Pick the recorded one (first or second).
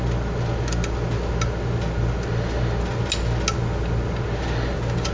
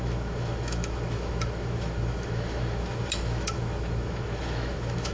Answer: first